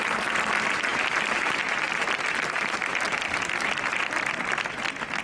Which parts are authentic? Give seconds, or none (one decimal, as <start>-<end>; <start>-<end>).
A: 0.0-5.2